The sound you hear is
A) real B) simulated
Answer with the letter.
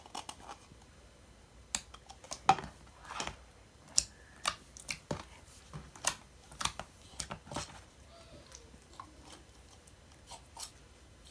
A